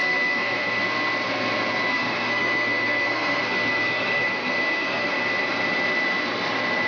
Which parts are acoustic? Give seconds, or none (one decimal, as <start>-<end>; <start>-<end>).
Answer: 0.8-1.9; 5.1-6.9